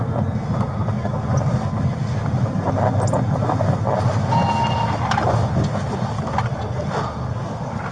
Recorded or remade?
recorded